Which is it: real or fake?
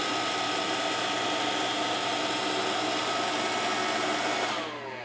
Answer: real